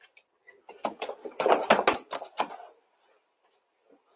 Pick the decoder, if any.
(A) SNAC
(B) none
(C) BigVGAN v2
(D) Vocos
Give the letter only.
B